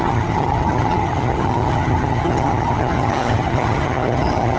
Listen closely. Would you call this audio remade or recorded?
remade